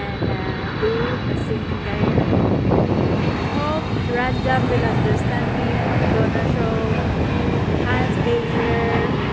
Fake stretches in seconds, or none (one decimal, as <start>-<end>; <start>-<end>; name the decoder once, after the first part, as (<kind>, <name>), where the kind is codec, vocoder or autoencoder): none